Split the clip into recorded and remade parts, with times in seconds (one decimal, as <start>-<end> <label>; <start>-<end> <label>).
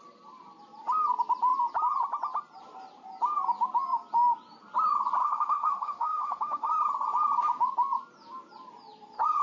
0.0-5.2 recorded; 5.2-6.7 remade; 6.7-9.4 recorded